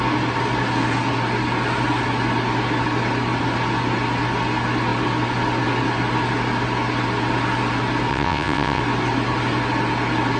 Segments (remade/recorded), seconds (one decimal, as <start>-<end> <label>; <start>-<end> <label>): 0.0-8.1 recorded; 8.1-8.8 remade; 8.8-10.4 recorded